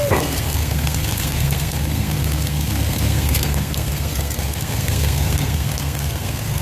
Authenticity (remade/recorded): remade